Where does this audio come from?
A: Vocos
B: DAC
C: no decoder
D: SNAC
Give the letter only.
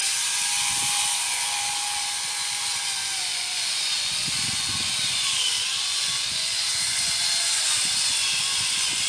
A